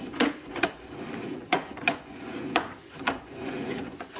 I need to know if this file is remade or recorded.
remade